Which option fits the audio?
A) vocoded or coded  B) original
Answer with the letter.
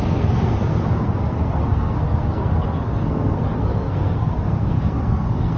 A